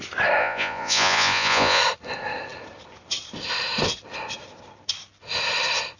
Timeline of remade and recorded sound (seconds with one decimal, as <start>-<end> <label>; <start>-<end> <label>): 0.0-0.4 recorded; 0.4-1.8 remade; 1.8-6.0 recorded